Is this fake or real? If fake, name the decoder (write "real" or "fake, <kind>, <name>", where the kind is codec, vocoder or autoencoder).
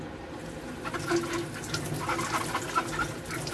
real